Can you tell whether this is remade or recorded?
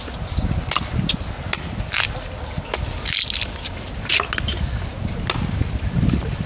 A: recorded